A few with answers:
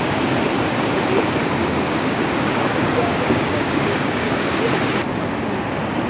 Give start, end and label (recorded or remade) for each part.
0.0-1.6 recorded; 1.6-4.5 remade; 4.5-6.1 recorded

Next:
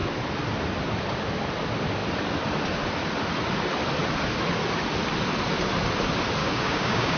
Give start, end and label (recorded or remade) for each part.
0.0-6.4 recorded; 6.4-7.2 remade

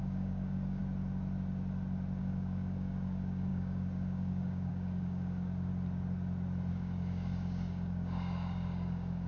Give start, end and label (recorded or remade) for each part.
0.0-0.8 remade; 0.8-2.2 recorded; 2.2-5.7 remade; 5.7-6.7 recorded; 6.7-9.3 remade

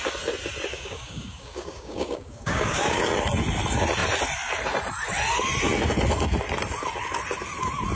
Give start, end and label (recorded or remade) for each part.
0.0-0.7 recorded; 0.7-3.0 remade; 3.0-8.0 recorded

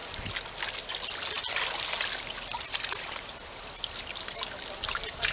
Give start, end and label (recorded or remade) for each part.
0.0-5.3 recorded

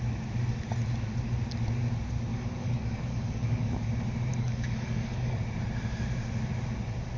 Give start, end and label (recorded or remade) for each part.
0.0-2.3 recorded; 2.3-3.9 remade; 3.9-4.3 recorded; 4.3-5.4 remade; 5.4-7.2 recorded

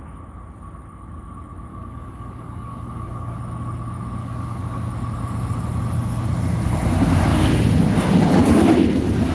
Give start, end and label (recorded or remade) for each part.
0.0-1.7 recorded; 1.7-3.4 remade; 3.4-4.2 recorded; 4.2-4.9 remade; 4.9-9.3 recorded